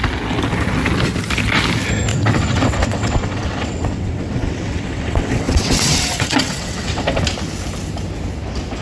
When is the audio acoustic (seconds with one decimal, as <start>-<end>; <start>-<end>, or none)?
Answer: 0.0-2.1; 7.2-8.8